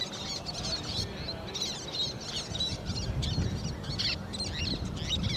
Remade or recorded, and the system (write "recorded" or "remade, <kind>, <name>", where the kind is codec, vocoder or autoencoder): recorded